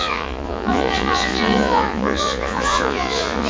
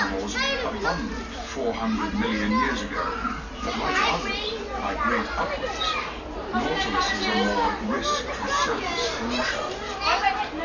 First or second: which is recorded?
second